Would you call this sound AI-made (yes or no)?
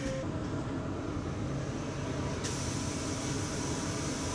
no